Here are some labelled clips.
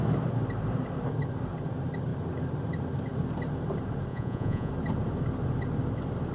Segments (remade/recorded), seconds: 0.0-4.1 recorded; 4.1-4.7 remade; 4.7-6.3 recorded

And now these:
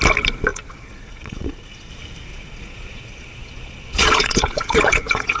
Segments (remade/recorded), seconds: 0.0-0.5 recorded; 0.5-1.9 remade; 1.9-2.3 recorded; 2.3-5.4 remade

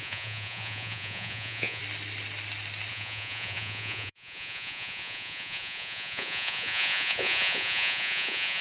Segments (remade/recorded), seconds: 0.0-1.8 remade; 1.8-2.9 recorded; 2.9-8.6 remade

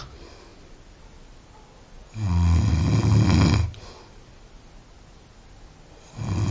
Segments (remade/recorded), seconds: 0.0-6.5 recorded

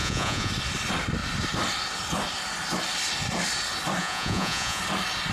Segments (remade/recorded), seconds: 0.0-0.5 remade; 0.5-4.0 recorded; 4.0-4.8 remade; 4.8-5.3 recorded